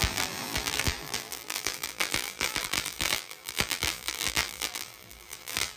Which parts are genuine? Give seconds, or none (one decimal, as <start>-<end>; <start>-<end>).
none